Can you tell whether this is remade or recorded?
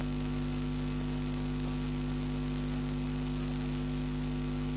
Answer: recorded